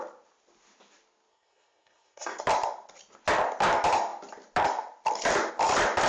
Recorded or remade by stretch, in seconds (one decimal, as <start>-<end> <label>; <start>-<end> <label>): 0.0-1.3 recorded; 1.3-2.4 remade; 2.4-6.1 recorded